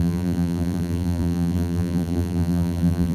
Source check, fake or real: fake